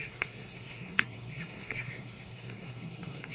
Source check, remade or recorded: remade